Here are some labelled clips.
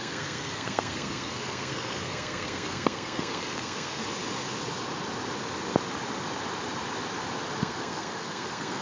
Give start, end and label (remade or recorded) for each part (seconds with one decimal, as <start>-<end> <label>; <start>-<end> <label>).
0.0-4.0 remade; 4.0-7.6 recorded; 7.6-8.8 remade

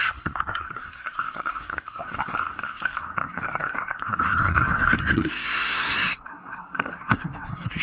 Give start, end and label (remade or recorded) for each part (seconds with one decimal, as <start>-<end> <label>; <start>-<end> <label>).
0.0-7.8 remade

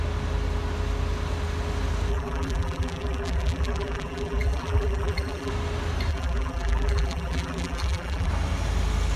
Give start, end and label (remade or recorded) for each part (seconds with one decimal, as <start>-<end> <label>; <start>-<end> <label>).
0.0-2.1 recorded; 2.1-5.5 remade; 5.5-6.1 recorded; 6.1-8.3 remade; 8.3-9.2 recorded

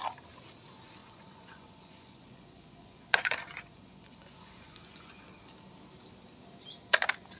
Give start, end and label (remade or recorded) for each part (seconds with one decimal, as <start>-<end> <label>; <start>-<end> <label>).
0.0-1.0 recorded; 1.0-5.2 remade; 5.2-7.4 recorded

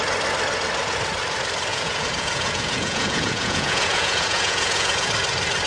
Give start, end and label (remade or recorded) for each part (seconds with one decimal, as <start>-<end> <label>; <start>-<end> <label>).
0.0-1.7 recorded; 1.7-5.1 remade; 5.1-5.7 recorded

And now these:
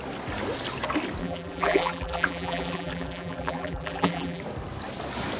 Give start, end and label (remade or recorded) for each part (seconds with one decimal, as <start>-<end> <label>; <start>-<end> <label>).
0.0-1.2 recorded; 1.2-4.4 remade; 4.4-5.4 recorded

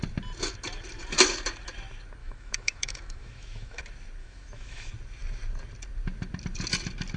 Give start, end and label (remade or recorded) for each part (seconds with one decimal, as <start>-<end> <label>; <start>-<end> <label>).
0.0-2.2 recorded; 2.2-3.8 remade; 3.8-4.2 recorded; 4.2-4.9 remade; 4.9-7.2 recorded